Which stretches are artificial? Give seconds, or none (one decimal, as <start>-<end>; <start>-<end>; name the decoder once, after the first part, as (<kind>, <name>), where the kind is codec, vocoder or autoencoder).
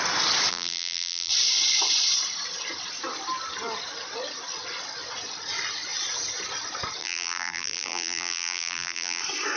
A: 0.5-1.3 (vocoder, BigVGAN v2); 7.0-9.2